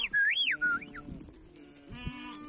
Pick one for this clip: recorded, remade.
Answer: recorded